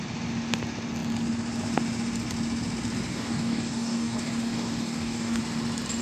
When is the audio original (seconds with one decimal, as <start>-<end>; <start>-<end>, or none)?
0.0-3.1; 5.4-6.0